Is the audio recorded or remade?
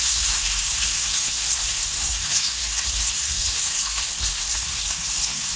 remade